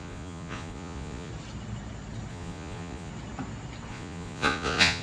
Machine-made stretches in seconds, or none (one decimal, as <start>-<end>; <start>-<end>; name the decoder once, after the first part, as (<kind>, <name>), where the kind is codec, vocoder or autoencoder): 0.0-1.3 (vocoder, Vocos); 2.3-3.1; 3.9-5.0